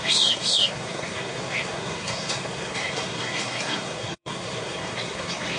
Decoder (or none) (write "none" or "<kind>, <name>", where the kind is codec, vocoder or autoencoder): codec, SNAC